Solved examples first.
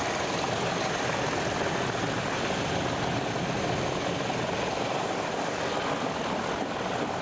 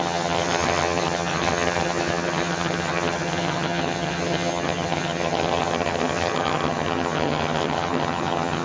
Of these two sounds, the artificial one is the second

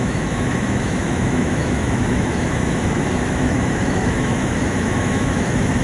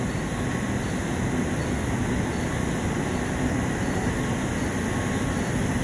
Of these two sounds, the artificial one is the first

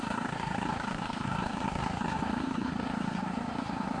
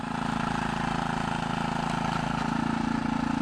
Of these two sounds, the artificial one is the first